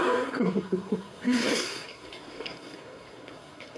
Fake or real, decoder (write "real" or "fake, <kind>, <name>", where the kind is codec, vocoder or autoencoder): fake, codec, SNAC